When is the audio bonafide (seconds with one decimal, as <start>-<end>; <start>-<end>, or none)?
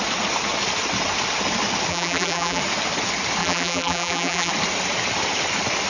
0.0-1.9; 2.6-3.4; 4.5-5.9